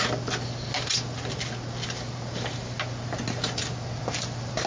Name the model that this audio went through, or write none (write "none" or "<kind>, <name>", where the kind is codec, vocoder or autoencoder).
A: none